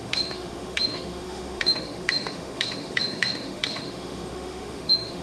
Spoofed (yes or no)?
yes